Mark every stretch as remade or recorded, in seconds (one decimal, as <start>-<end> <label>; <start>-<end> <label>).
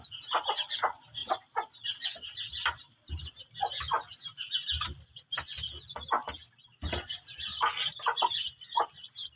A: 0.0-9.4 recorded